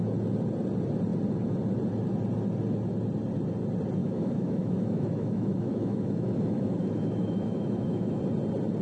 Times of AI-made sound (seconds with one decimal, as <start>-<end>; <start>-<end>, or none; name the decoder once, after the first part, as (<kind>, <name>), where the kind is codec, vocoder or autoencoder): 4.0-8.2 (autoencoder, DAC-VAE)